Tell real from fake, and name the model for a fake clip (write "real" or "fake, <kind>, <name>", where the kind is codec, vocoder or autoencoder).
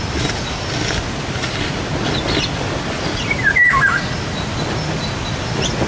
real